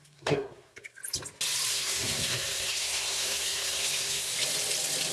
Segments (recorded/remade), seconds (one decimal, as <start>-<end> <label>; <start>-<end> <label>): 0.0-1.0 remade; 1.0-1.7 recorded; 1.7-4.3 remade; 4.3-5.1 recorded